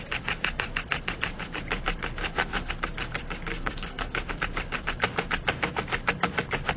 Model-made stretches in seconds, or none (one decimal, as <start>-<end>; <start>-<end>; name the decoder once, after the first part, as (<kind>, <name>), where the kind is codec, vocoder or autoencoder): 2.2-2.7 (codec, SNAC); 3.5-4.3

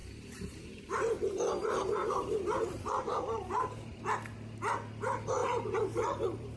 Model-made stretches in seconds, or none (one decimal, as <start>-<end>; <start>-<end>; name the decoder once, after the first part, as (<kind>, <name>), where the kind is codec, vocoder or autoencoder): 0.0-4.0 (vocoder, BigVGAN v2); 5.4-6.6